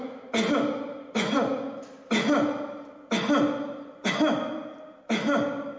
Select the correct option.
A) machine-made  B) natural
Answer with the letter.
B